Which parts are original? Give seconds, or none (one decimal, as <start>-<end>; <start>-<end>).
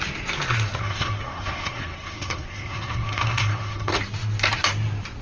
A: 0.0-0.8; 3.9-5.2